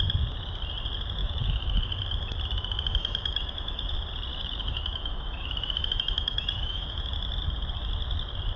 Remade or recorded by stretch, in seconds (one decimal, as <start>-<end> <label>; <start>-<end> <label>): 0.0-1.2 recorded; 1.2-1.8 remade; 1.8-3.0 recorded; 3.0-3.8 remade; 3.8-4.3 recorded; 4.3-7.1 remade; 7.1-8.6 recorded